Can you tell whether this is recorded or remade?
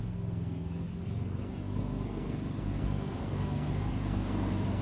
remade